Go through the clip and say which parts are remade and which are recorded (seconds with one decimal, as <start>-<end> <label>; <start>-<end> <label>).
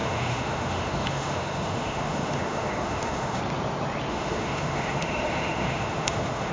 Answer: 0.0-3.4 remade; 3.4-4.1 recorded; 4.1-6.5 remade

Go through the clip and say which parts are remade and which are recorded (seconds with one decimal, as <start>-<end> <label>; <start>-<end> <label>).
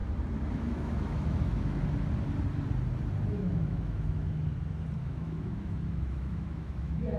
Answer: 0.0-0.5 recorded; 0.5-1.8 remade; 1.8-3.3 recorded; 3.3-4.5 remade; 4.5-5.0 recorded; 5.0-7.2 remade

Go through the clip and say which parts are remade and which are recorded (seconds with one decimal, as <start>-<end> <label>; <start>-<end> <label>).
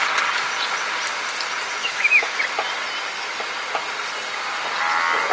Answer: 0.0-1.8 recorded; 1.8-2.4 remade; 2.4-5.3 recorded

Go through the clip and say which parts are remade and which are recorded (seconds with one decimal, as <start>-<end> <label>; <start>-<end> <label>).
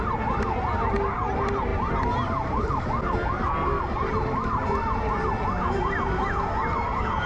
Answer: 0.0-7.3 recorded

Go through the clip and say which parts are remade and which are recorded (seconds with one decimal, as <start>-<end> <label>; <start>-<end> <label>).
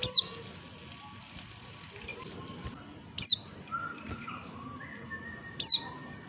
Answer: 0.0-6.3 recorded